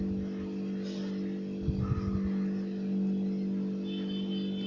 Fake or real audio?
real